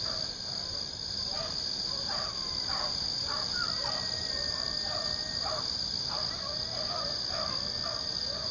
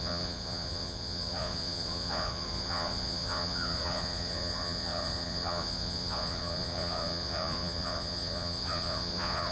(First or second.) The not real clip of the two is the second